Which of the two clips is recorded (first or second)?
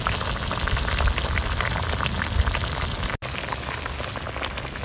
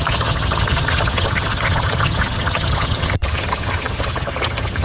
first